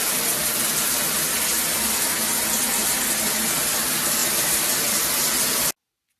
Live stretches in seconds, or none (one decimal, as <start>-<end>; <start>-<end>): 0.0-4.2; 4.9-6.2